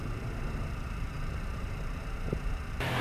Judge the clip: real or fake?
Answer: fake